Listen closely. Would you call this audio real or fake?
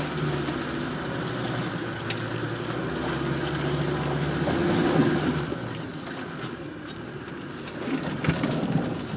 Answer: real